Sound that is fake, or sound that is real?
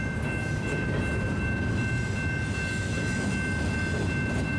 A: real